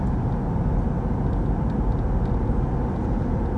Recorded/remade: recorded